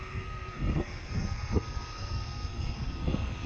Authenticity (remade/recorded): remade